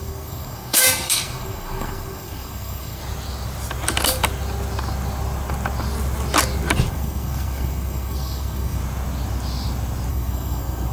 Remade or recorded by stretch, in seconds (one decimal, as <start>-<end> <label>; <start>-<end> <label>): 0.0-3.0 remade; 3.0-6.9 recorded; 6.9-8.8 remade; 8.8-10.1 recorded; 10.1-10.9 remade